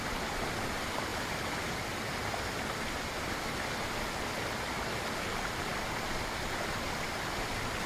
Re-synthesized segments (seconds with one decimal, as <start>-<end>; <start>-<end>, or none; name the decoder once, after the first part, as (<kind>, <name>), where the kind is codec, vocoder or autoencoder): none